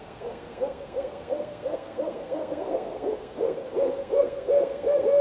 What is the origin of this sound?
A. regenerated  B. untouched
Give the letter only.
A